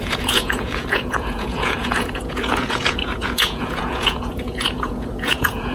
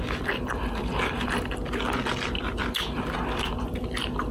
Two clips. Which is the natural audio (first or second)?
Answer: second